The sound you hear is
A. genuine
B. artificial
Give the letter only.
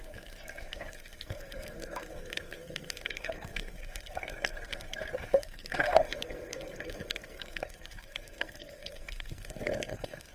B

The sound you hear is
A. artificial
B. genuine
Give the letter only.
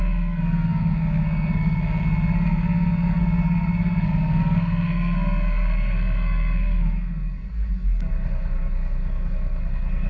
A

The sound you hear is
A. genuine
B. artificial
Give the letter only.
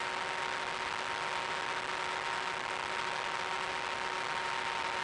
A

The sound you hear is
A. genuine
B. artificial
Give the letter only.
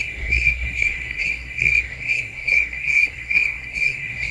B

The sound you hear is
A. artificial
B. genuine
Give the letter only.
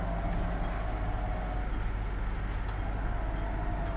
B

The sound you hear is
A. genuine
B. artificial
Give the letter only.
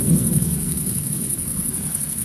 B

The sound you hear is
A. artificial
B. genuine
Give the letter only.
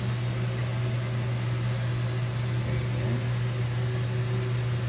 B